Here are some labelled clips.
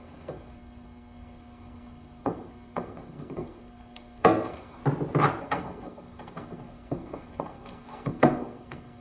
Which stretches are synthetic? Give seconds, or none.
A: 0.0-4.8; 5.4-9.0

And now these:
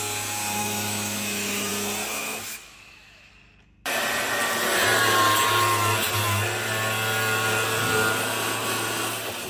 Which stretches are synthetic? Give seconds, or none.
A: 0.6-1.7; 2.2-3.3

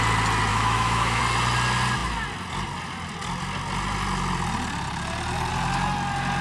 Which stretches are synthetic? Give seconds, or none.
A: 0.5-1.2